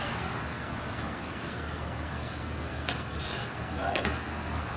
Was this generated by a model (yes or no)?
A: yes